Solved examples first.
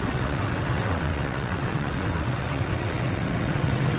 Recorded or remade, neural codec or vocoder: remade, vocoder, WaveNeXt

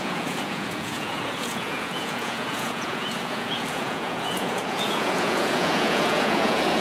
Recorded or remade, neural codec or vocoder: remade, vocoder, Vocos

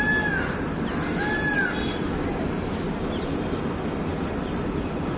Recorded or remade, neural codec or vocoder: recorded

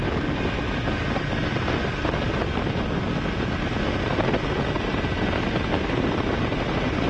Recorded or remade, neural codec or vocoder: recorded